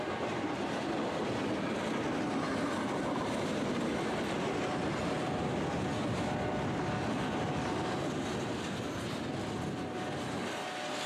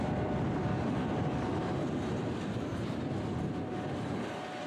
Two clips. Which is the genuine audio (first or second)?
first